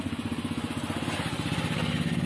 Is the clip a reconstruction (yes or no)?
no